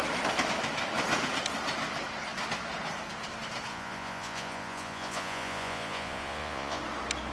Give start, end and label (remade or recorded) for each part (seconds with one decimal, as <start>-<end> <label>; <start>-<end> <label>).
0.0-3.7 recorded; 3.7-6.8 remade; 6.8-7.3 recorded